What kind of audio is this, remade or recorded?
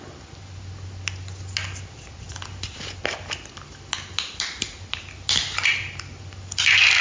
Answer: recorded